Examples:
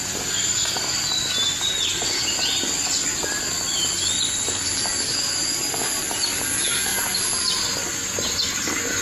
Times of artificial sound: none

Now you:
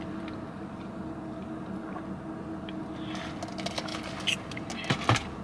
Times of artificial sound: none

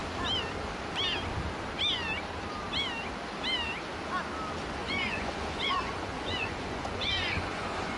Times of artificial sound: 4.8-8.0 (vocoder, Vocos)

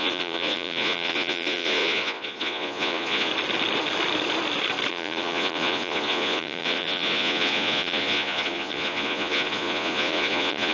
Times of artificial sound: 0.0-3.3 (vocoder, Vocos); 4.9-10.7

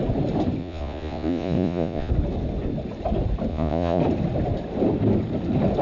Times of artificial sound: 0.6-2.1 (vocoder, Vocos); 3.5-4.0

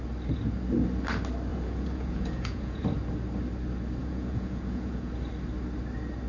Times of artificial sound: 1.5-2.8 (vocoder, Vocos); 4.0-5.1

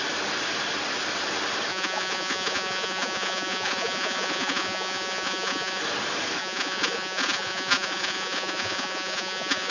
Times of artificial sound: 1.7-5.8 (vocoder, Vocos); 6.4-9.7